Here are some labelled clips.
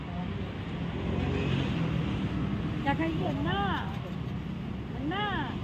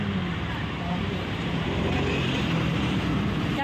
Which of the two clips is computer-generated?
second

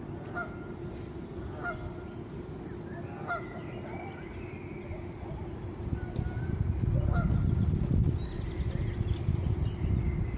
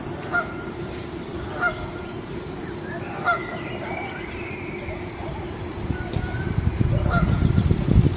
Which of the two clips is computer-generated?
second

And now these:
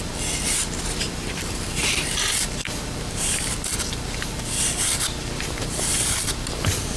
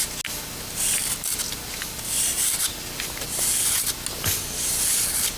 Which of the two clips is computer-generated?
first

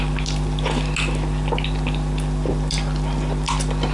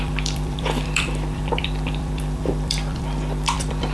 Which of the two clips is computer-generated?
second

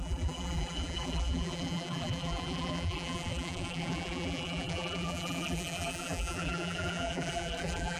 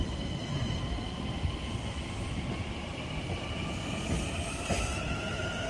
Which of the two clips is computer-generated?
first